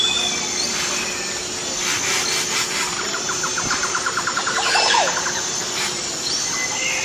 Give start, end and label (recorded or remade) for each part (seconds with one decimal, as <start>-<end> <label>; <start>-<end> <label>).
0.0-2.9 recorded; 2.9-6.1 remade; 6.1-7.0 recorded